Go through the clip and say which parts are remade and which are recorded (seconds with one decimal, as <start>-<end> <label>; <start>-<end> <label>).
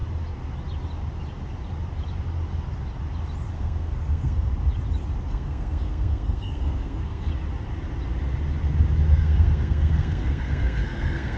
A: 0.0-3.5 recorded; 3.5-4.5 remade; 4.5-5.3 recorded; 5.3-7.3 remade; 7.3-9.1 recorded; 9.1-11.4 remade